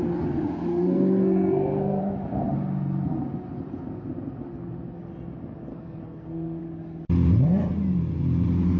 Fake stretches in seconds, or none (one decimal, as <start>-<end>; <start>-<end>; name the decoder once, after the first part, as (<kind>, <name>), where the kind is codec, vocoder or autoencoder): 0.7-2.0 (codec, SNAC); 5.7-6.6